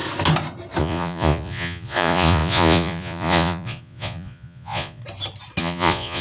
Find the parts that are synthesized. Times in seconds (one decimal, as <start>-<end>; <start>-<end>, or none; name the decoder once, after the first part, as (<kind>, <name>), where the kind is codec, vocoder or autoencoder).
0.8-5.0 (vocoder, Vocos); 5.6-6.2